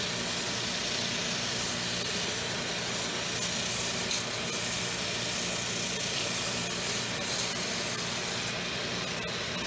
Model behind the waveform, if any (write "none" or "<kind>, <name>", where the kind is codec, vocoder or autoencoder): none